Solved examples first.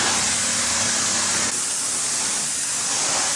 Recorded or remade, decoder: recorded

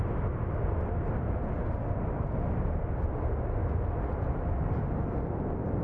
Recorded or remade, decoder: recorded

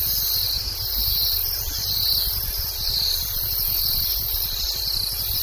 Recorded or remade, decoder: recorded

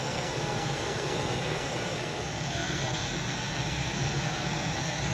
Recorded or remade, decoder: remade, codec, SNAC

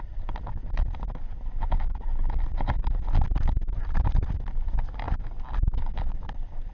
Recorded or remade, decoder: recorded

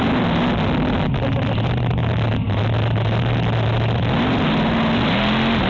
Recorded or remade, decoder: recorded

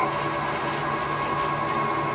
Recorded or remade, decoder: recorded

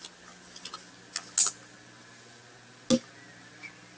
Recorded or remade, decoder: recorded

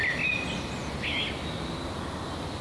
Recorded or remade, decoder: recorded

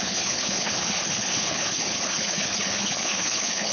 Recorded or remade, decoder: remade, codec, HILCodec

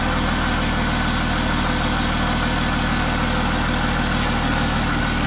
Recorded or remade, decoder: recorded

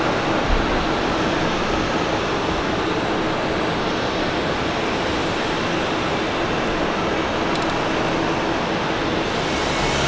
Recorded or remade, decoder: recorded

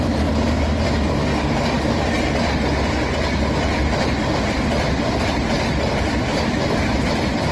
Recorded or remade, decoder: remade, vocoder, BigVGAN v2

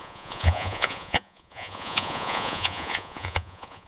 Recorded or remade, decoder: remade, vocoder, Vocos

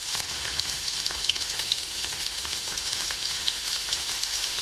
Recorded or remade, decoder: remade, autoencoder, DAC-VAE